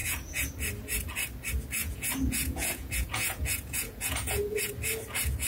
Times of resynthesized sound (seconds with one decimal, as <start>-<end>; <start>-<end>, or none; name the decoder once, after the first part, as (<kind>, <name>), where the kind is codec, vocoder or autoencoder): 0.0-0.5 (vocoder, Vocos); 1.8-4.7